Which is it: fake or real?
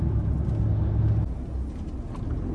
real